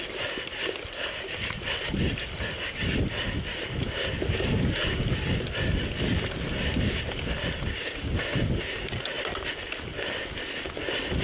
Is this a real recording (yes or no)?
yes